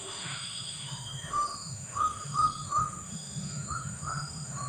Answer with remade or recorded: remade